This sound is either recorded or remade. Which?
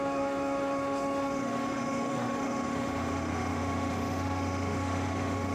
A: remade